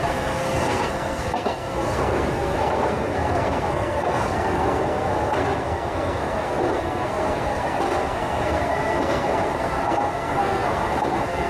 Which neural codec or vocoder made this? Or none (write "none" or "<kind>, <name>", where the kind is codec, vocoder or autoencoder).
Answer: codec, SNAC